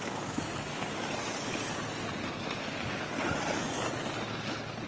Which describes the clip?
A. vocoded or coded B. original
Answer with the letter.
B